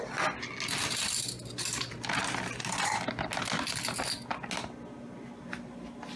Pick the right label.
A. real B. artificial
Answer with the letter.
A